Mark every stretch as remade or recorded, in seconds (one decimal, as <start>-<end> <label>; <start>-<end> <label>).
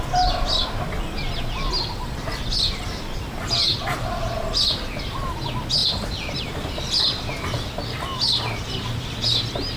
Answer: 0.0-5.8 recorded; 5.8-6.7 remade; 6.7-9.8 recorded